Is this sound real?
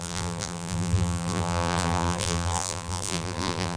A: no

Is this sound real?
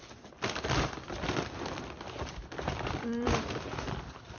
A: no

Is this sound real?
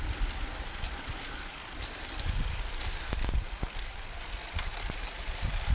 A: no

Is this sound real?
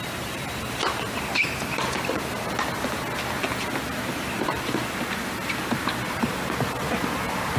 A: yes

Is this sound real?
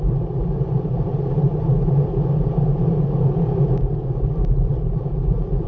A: no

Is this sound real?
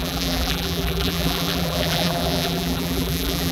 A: no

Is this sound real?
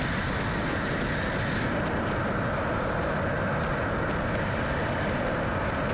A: yes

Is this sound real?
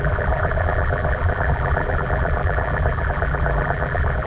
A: no